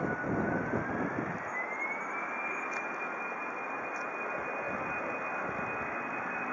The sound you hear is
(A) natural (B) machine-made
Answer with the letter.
A